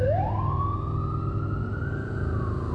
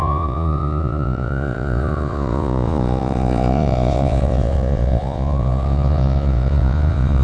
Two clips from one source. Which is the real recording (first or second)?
first